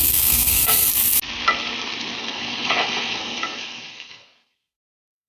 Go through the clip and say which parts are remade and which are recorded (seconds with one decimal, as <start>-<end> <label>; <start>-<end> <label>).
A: 0.0-0.9 remade; 0.9-2.2 recorded; 2.2-5.3 remade